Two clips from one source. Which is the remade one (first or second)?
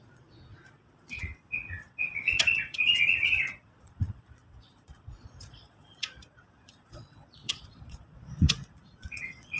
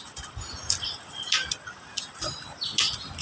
first